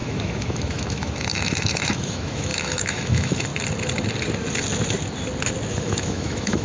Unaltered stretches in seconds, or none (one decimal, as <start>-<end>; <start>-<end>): 3.5-5.7